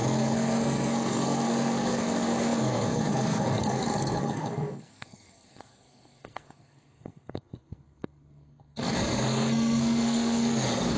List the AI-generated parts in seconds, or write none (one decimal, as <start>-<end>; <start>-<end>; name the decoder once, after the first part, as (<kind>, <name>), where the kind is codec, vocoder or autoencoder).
0.0-11.0 (codec, SNAC)